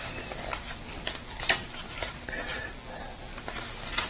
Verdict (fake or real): real